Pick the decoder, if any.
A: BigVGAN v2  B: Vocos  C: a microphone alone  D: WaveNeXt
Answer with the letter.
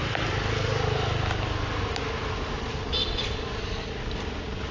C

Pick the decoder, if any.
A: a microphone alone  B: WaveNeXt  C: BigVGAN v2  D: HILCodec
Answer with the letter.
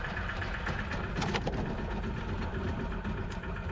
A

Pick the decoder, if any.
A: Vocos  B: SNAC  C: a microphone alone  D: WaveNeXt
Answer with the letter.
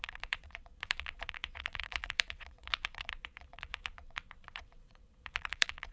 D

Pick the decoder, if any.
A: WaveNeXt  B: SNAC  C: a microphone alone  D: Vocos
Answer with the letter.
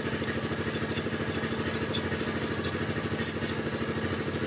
C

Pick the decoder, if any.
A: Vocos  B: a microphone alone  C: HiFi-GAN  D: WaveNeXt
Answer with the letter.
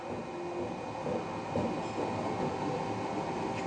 B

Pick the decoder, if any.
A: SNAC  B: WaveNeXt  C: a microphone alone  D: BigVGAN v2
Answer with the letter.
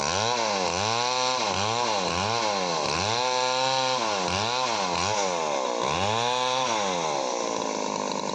C